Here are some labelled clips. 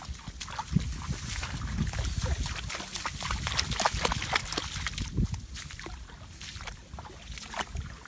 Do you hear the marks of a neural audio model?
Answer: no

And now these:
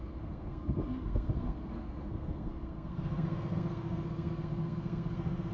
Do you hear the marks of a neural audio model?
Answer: yes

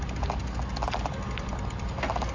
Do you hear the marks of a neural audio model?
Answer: no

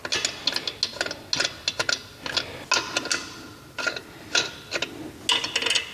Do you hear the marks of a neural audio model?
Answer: no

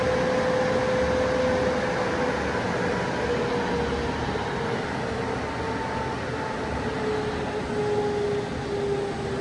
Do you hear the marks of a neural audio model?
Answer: no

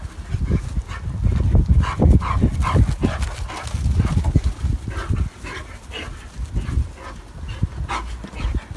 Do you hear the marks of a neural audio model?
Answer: no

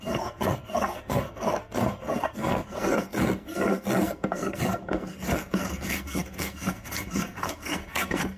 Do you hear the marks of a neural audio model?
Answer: yes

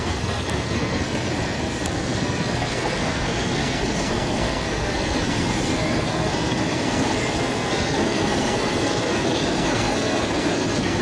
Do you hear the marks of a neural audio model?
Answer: yes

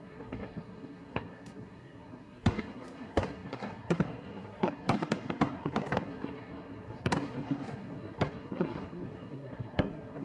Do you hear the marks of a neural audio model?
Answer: yes